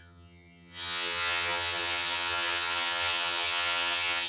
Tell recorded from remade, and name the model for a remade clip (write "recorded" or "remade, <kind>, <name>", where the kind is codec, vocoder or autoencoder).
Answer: remade, vocoder, HiFi-GAN